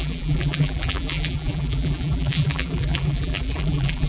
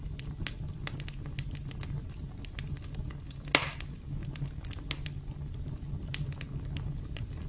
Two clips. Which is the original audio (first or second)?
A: second